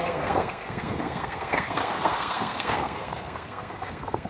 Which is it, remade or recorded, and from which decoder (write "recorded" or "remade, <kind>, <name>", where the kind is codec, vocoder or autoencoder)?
remade, codec, SNAC